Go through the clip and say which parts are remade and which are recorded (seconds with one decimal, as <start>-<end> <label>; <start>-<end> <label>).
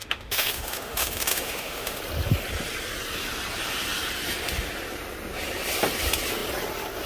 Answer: 0.0-2.0 remade; 2.0-7.1 recorded